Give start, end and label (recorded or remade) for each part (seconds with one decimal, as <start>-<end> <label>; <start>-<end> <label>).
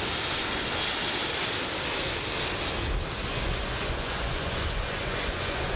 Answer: 0.0-3.3 recorded; 3.3-5.8 remade